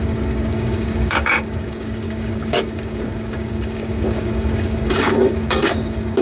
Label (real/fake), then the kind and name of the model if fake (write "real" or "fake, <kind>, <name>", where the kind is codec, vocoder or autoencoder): fake, codec, DAC